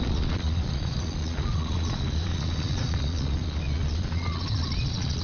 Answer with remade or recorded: remade